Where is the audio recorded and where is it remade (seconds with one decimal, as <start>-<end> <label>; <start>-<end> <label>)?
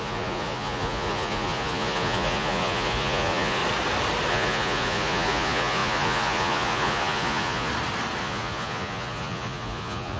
0.0-3.6 remade; 3.6-4.3 recorded; 4.3-7.7 remade; 7.7-8.2 recorded; 8.2-10.2 remade